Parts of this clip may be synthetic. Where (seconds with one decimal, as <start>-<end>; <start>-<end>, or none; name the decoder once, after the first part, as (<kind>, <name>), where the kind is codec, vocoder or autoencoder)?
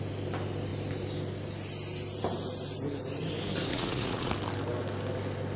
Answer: 3.7-4.3 (vocoder, Vocos)